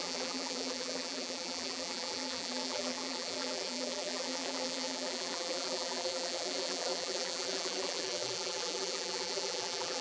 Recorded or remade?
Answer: remade